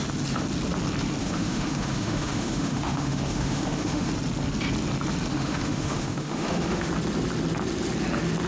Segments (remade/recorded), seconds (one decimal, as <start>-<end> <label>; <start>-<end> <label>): 0.0-1.2 recorded; 1.2-4.1 remade; 4.1-5.3 recorded; 5.3-6.9 remade; 6.9-8.5 recorded